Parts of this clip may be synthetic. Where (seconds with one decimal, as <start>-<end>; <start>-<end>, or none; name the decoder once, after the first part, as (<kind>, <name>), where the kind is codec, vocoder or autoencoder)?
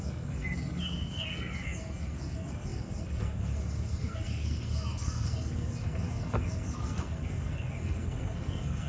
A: 0.0-8.9 (codec, SNAC)